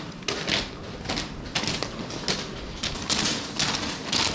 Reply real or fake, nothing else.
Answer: real